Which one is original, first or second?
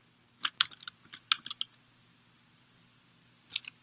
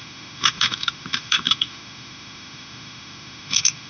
first